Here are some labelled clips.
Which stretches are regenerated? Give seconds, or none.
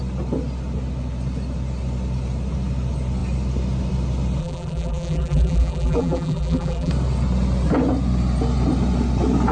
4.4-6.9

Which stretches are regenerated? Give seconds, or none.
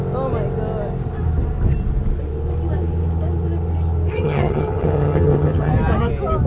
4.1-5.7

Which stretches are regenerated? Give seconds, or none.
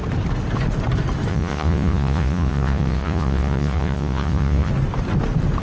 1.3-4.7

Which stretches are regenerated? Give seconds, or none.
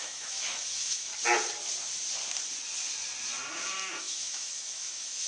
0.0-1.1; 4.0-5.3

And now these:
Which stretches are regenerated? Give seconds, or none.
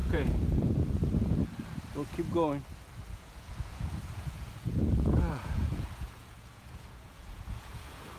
0.0-0.7; 3.1-8.2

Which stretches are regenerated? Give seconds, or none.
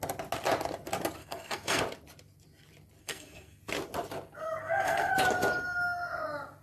1.2-1.8; 3.0-3.6; 4.6-5.1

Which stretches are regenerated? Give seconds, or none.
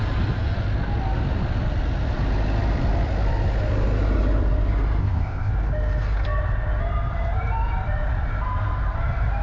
5.0-5.5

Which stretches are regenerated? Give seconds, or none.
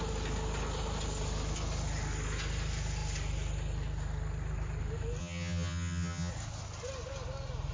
5.2-6.3